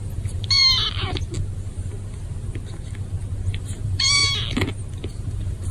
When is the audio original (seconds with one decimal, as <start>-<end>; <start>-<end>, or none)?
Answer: 0.6-3.6; 4.2-5.2